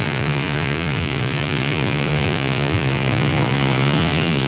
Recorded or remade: remade